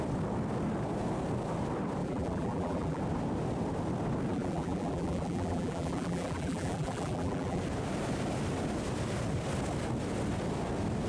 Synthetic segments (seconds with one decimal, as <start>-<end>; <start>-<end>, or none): 2.0-3.0; 4.3-7.6